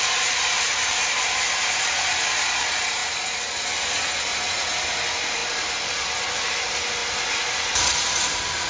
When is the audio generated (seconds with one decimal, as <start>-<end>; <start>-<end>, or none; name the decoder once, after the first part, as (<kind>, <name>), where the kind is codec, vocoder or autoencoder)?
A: 0.0-3.0 (vocoder, BigVGAN v2); 4.2-7.0; 7.8-8.7